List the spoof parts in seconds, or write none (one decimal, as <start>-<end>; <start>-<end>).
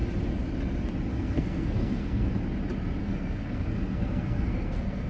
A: 1.1-2.3; 3.0-5.1